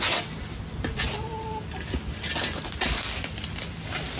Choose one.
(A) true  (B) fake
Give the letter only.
A